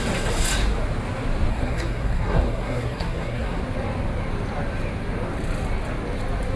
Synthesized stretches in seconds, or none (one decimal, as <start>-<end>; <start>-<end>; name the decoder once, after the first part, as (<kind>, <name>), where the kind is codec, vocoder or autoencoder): 1.5-3.6 (codec, SNAC)